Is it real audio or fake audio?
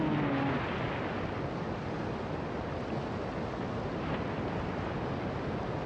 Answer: real